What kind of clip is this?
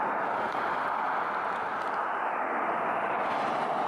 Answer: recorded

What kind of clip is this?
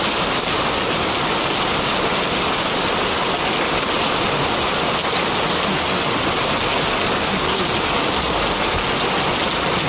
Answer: recorded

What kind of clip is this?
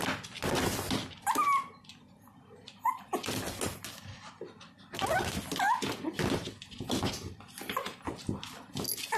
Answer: recorded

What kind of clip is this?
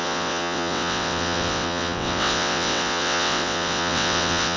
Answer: remade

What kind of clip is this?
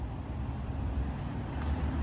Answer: recorded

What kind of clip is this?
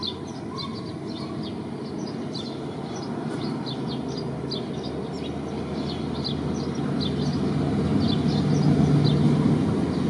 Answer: recorded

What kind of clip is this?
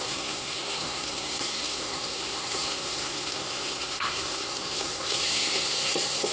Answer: remade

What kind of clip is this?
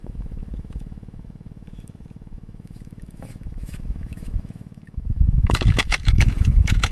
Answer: remade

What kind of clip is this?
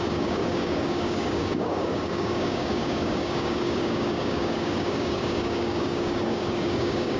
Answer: remade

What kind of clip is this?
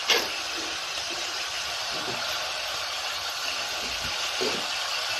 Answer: recorded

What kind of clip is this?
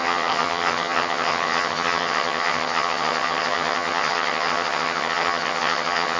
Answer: remade